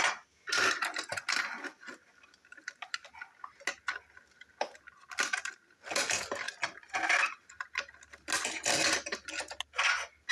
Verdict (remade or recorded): recorded